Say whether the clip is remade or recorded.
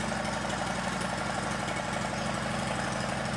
recorded